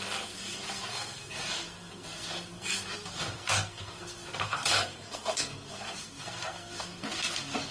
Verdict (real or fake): fake